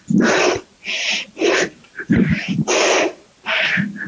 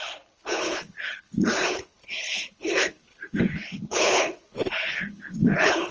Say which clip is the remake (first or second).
second